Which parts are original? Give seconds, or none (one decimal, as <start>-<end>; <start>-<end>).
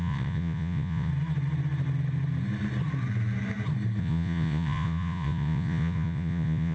1.1-4.0